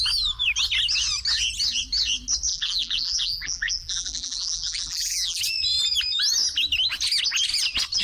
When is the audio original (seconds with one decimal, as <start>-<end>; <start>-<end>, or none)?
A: 0.0-2.5; 5.4-8.0

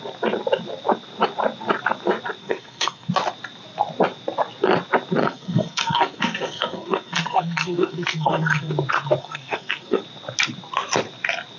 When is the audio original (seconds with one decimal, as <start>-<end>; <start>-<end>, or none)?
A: 0.0-2.4; 3.1-5.2; 8.7-9.2; 10.0-11.6

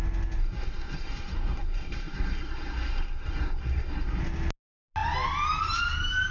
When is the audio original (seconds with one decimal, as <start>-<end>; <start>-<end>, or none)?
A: 0.0-0.4; 4.2-6.3

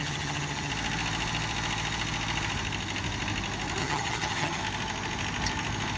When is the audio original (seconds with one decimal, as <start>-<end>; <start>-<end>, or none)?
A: 0.7-3.8; 4.6-6.0

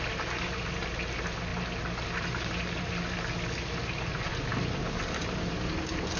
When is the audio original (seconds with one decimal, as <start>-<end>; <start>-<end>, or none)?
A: 0.0-6.2